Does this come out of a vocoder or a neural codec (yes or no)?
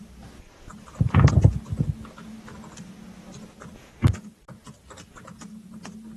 no